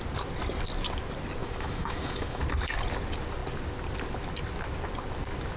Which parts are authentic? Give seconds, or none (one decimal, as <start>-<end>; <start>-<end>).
0.0-1.4; 2.4-5.6